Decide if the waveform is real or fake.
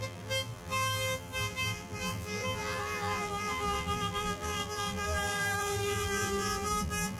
fake